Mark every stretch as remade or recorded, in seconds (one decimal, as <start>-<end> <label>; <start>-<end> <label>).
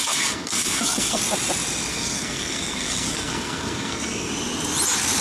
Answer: 0.0-1.2 remade; 1.2-1.9 recorded; 1.9-4.3 remade; 4.3-5.2 recorded